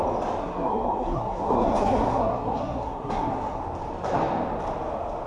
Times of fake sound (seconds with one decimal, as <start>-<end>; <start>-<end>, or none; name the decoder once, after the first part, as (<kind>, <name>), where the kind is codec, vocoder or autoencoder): 0.4-3.6 (codec, SNAC)